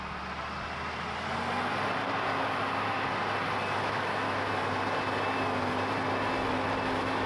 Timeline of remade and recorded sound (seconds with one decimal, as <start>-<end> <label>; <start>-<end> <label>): 0.0-3.8 recorded; 3.8-4.4 remade; 4.4-7.3 recorded